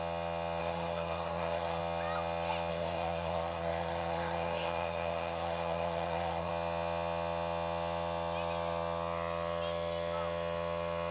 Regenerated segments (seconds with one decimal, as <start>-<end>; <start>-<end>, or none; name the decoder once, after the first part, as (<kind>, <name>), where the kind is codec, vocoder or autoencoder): 0.6-1.8 (codec, SNAC); 2.7-6.5